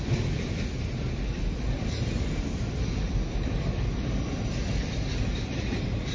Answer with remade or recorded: recorded